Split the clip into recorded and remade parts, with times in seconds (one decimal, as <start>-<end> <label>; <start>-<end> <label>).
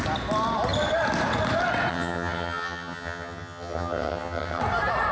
0.0-1.9 recorded; 1.9-4.6 remade; 4.6-5.1 recorded